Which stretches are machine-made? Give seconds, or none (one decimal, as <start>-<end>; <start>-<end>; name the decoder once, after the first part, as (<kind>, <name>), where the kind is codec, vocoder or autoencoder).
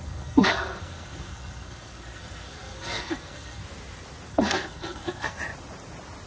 0.0-3.6 (codec, SNAC); 4.3-5.4